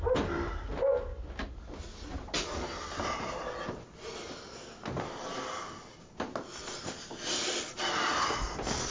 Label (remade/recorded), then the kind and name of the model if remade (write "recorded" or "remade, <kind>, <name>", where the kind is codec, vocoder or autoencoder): recorded